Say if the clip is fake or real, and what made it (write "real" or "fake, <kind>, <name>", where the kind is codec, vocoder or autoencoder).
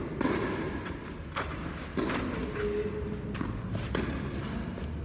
real